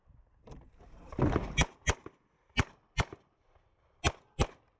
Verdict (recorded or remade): recorded